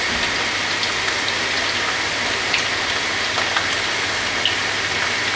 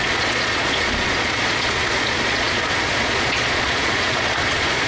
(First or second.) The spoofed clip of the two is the second